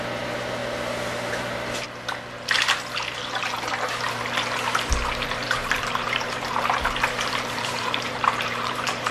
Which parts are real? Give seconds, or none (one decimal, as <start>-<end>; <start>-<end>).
0.0-5.6